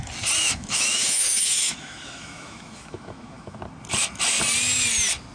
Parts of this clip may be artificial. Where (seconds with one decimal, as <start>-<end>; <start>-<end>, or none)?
0.4-3.6